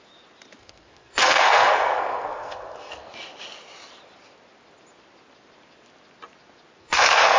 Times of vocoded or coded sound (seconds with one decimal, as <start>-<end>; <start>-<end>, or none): 0.6-3.1; 6.8-7.4